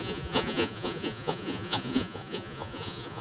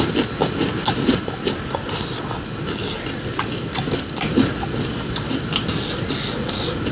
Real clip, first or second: second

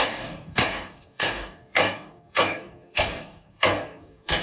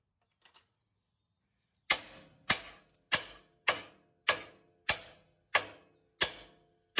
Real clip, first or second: second